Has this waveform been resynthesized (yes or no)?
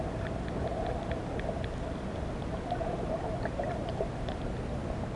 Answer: no